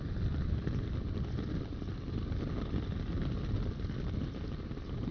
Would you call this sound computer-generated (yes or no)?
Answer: no